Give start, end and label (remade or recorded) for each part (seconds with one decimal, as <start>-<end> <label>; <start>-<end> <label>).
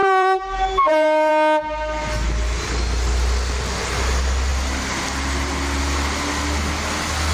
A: 0.0-1.3 remade; 1.3-7.3 recorded